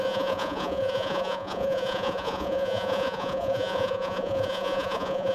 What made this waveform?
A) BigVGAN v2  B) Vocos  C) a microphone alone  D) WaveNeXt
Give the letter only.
B